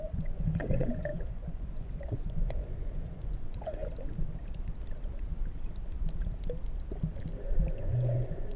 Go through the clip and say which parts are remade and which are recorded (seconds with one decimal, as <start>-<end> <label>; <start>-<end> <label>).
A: 0.0-3.8 remade; 3.8-7.7 recorded; 7.7-8.6 remade